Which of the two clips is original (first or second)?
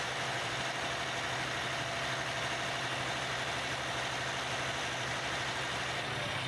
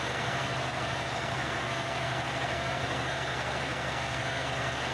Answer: first